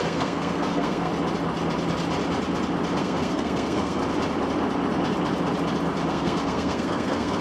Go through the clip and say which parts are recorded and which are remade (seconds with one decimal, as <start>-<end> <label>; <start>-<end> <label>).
0.0-1.1 remade; 1.1-3.0 recorded; 3.0-4.0 remade; 4.0-6.1 recorded; 6.1-7.4 remade

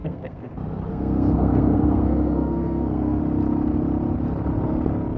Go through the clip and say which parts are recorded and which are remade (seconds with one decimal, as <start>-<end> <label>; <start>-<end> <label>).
0.0-0.5 remade; 0.5-0.9 recorded; 0.9-3.2 remade; 3.2-5.2 recorded

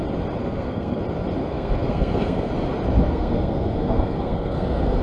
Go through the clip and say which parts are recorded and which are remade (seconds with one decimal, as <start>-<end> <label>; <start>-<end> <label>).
0.0-0.4 recorded; 0.4-1.0 remade; 1.0-1.4 recorded; 1.4-2.5 remade; 2.5-3.0 recorded; 3.0-5.0 remade

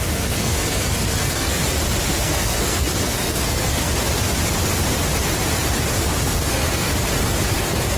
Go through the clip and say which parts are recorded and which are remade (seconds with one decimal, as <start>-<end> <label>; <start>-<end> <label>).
0.0-1.6 remade; 1.6-2.1 recorded; 2.1-3.9 remade; 3.9-6.0 recorded; 6.0-6.9 remade; 6.9-7.5 recorded; 7.5-8.0 remade

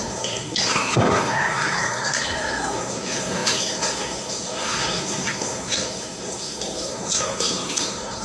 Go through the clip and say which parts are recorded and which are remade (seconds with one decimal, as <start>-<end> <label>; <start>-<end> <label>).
0.0-8.2 remade

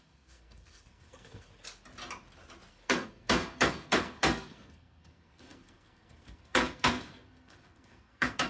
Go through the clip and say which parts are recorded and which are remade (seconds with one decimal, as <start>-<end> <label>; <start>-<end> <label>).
0.0-1.5 remade; 1.5-2.7 recorded; 2.7-8.5 remade